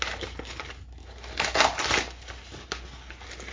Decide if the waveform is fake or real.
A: real